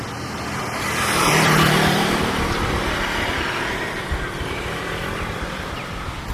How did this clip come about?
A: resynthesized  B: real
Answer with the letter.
A